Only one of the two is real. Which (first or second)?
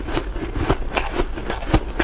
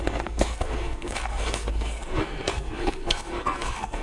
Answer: first